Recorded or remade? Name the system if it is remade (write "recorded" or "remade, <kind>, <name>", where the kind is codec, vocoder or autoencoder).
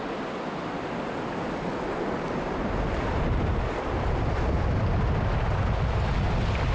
recorded